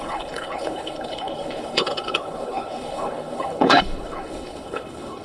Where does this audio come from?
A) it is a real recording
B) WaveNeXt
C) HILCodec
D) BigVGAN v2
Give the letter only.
C